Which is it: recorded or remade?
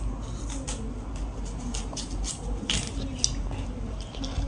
recorded